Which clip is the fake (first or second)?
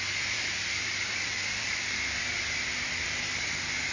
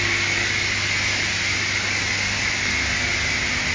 first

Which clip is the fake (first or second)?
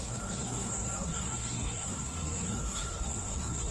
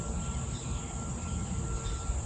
first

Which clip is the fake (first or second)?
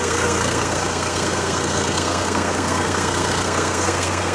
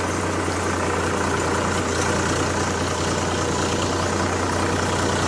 first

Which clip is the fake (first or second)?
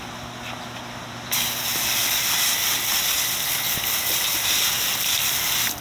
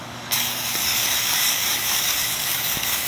second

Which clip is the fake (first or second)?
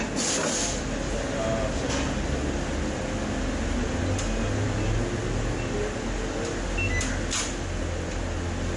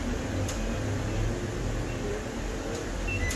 second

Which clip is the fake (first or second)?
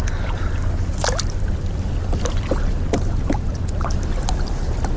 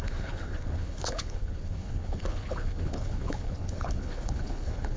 second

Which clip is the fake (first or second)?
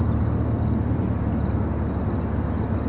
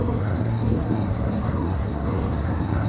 second